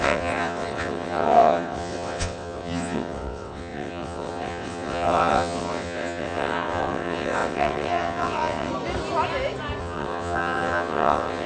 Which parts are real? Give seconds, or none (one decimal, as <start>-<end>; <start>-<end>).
8.7-9.8